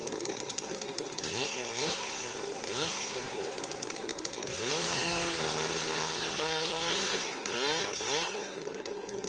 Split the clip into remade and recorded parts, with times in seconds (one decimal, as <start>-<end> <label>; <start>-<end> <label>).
0.0-9.3 remade